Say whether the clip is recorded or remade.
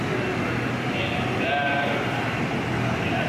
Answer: recorded